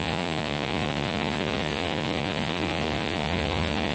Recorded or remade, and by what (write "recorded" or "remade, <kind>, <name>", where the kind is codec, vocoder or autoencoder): remade, vocoder, Vocos